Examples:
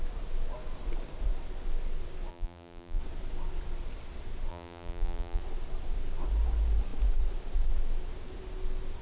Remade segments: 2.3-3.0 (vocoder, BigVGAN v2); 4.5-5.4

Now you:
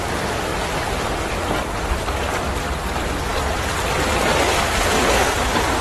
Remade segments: none